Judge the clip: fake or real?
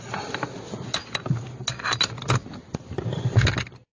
real